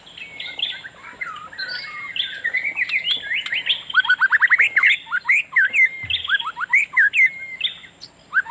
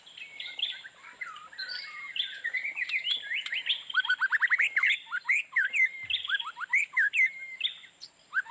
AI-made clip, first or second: second